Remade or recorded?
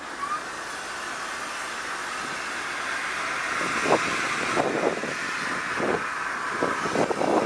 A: recorded